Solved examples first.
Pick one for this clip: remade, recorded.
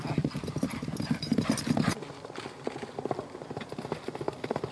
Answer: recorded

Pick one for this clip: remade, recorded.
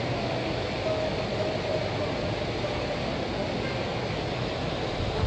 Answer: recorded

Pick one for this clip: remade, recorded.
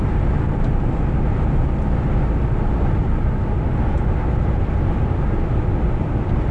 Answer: recorded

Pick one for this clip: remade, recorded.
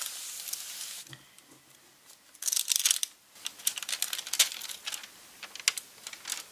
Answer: recorded